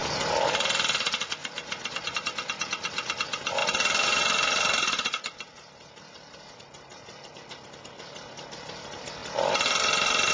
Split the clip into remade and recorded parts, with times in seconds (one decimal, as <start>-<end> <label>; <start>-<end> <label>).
0.0-0.5 recorded; 0.5-1.4 remade; 1.4-1.9 recorded; 1.9-10.3 remade